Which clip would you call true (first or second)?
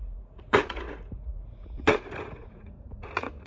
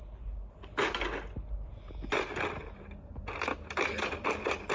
second